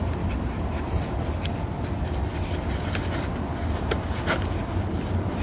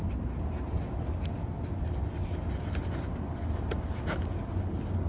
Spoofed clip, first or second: first